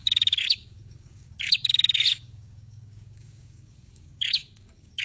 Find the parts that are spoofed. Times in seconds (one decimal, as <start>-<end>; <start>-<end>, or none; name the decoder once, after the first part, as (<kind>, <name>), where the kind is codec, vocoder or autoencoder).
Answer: 0.0-5.0 (codec, DAC)